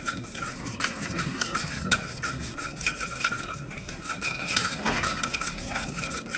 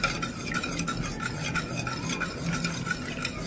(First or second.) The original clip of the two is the second